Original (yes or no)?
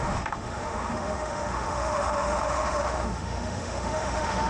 no